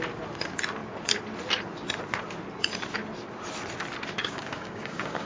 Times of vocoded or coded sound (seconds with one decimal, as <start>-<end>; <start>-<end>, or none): 4.2-5.3

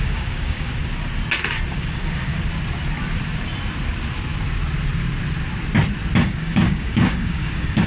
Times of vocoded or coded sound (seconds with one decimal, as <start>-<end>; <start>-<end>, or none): 0.0-0.8; 1.7-2.3; 6.2-7.9

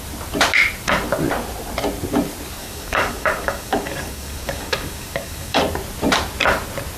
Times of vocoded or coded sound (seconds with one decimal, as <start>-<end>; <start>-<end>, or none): 2.6-5.6

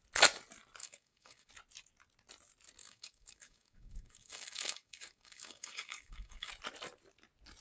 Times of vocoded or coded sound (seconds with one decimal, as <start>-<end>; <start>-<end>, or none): 0.8-1.5; 2.8-6.5

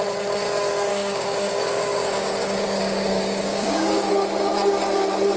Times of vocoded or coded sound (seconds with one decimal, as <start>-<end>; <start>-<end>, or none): 0.9-4.1

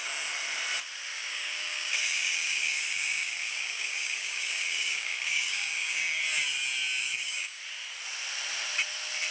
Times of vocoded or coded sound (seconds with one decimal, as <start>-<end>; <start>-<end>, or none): 1.1-6.2; 7.0-7.6

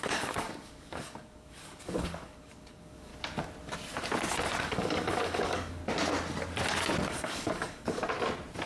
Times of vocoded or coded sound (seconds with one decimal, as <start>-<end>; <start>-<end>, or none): 0.0-3.1; 4.6-5.8; 7.1-8.0

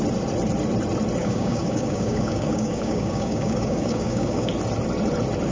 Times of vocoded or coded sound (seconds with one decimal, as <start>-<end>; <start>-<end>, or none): 1.2-4.5